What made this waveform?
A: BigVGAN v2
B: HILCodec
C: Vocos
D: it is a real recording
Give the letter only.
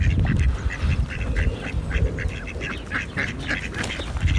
A